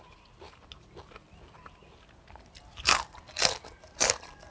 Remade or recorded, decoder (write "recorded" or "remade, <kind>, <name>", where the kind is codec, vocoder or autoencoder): recorded